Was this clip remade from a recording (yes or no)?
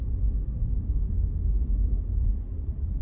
no